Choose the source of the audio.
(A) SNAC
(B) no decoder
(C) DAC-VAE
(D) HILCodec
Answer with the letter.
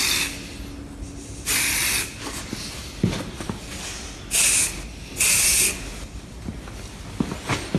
B